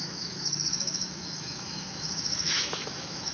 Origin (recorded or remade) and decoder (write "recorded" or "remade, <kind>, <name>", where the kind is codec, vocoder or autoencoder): remade, autoencoder, DAC-VAE